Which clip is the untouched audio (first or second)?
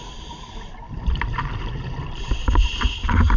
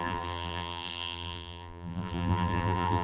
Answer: first